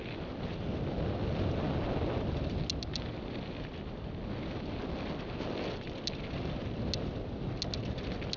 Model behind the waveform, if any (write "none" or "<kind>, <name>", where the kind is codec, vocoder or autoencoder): none